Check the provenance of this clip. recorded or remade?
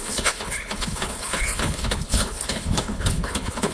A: remade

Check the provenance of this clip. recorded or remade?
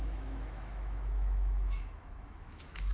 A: remade